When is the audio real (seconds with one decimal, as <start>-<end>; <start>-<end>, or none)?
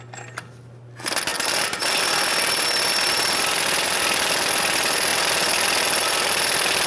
0.0-6.9